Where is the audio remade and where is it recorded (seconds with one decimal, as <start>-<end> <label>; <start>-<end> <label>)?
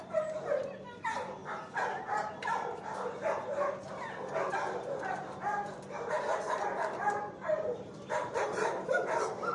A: 0.0-1.4 remade; 1.4-4.5 recorded; 4.5-9.5 remade